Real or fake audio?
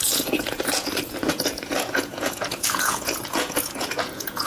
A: fake